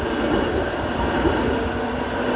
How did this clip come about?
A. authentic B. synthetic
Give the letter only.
A